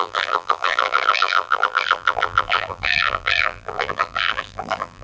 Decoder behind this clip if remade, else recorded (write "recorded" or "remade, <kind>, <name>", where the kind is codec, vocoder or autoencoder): remade, vocoder, BigVGAN v2